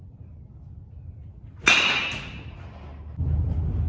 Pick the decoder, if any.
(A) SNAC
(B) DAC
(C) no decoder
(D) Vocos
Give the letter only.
C